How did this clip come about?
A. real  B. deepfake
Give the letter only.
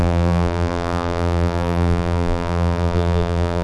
B